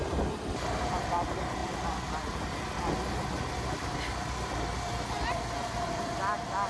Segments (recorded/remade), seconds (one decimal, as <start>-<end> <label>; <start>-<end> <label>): 0.0-6.7 recorded